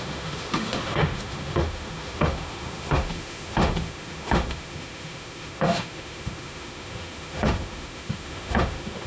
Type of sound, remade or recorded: remade